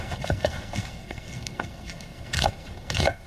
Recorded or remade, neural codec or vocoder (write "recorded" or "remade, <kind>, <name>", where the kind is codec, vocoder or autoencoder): remade, codec, SNAC